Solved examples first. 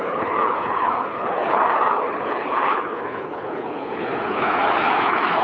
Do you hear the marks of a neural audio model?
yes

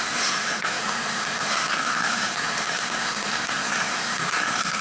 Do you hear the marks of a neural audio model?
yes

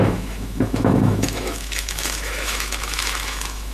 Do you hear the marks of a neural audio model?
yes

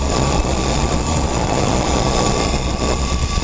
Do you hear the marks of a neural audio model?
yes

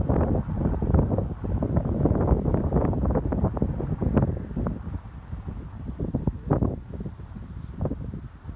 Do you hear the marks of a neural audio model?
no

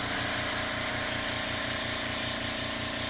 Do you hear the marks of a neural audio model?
no